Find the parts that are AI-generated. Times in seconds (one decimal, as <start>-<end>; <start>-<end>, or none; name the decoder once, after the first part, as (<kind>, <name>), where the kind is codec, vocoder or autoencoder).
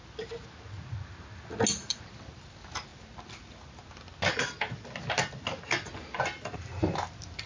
none